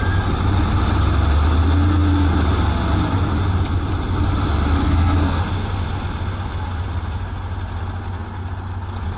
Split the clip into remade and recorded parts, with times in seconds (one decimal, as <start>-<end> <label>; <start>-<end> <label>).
0.0-4.8 recorded; 4.8-5.4 remade; 5.4-9.2 recorded